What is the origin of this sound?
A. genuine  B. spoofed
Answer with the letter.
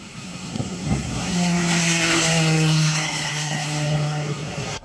B